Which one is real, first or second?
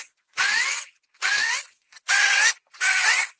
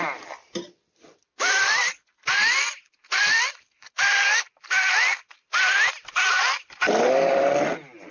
second